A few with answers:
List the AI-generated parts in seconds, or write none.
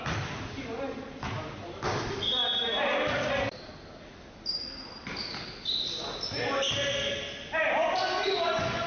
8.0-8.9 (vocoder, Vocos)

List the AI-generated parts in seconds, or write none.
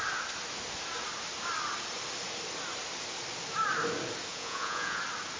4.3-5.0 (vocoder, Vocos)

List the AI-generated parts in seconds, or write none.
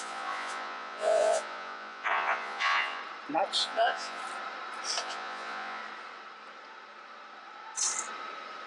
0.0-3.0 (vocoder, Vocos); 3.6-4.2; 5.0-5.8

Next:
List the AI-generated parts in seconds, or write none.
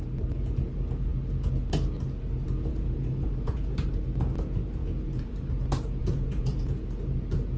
2.7-3.7 (vocoder, Vocos); 4.8-5.3; 6.0-7.0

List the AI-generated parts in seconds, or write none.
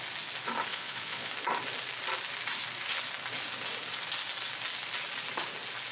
0.7-1.3 (vocoder, Vocos)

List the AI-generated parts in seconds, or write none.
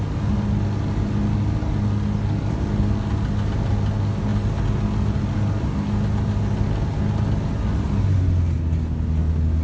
none